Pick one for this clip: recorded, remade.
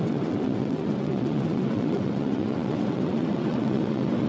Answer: remade